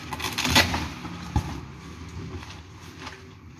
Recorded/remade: recorded